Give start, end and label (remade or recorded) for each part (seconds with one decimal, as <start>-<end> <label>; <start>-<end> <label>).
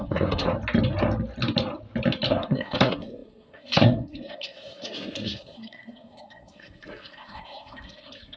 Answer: 0.0-0.5 remade; 0.5-2.3 recorded; 2.3-8.4 remade